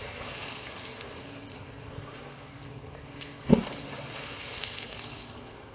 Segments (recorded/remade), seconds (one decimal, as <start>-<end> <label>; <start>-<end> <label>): 0.0-3.5 remade; 3.5-4.2 recorded; 4.2-5.7 remade